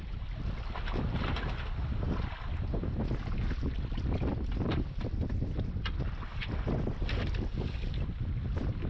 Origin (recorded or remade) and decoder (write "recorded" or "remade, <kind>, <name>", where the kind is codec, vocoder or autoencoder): recorded